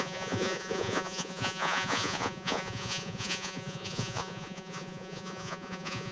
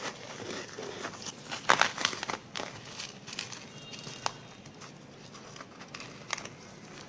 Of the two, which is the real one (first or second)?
second